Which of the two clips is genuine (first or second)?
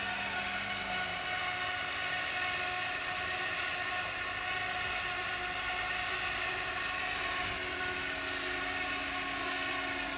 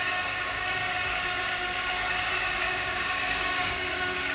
first